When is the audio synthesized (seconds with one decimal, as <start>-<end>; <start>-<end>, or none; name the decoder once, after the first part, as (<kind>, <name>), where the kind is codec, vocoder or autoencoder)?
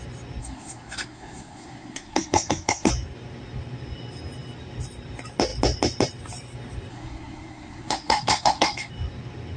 0.4-2.9 (codec, SNAC); 6.9-8.9